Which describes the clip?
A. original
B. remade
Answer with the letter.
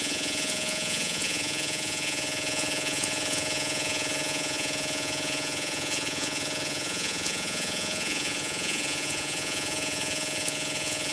B